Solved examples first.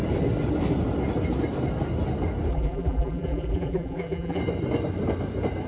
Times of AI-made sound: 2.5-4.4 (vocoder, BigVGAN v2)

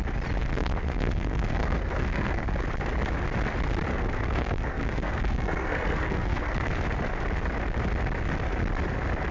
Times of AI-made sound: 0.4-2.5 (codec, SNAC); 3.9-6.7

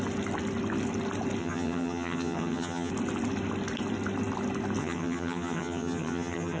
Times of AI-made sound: 1.4-2.9 (vocoder, HiFi-GAN); 4.8-6.6

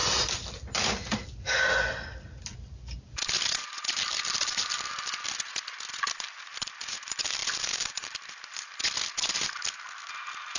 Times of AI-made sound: 0.0-3.3 (vocoder, BigVGAN v2); 7.4-8.7

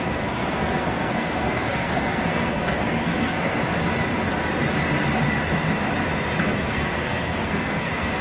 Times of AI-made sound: 0.0-3.6 (codec, SNAC); 6.4-8.2

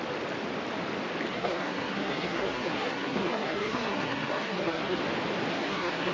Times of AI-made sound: 1.3-5.0 (codec, SNAC); 5.5-6.1

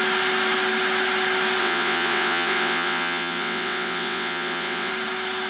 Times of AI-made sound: 1.6-4.9 (vocoder, WaveNeXt)